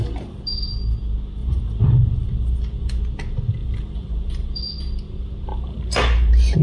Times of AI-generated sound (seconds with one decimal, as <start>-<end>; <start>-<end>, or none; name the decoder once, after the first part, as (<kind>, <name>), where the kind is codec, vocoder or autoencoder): 1.4-3.0 (vocoder, BigVGAN v2); 3.6-4.6; 5.5-6.6